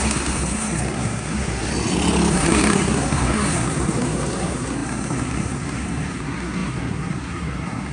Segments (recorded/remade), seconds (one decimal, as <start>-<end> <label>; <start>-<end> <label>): 0.0-1.7 remade; 1.7-2.3 recorded; 2.3-7.9 remade